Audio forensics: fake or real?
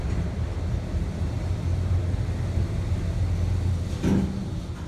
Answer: real